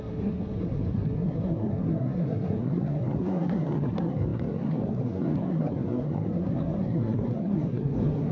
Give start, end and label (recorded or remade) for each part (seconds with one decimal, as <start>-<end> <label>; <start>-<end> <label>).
0.0-8.3 remade